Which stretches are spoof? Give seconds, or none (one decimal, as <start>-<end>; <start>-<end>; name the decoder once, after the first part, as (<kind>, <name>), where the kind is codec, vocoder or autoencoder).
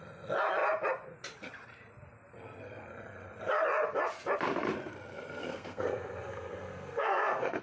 5.4-7.6 (codec, SNAC)